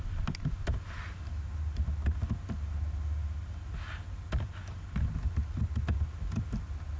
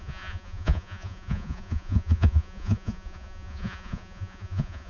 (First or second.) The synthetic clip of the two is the second